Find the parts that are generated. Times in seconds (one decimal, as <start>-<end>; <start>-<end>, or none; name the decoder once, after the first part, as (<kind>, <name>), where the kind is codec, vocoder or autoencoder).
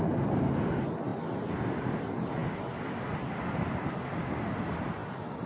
none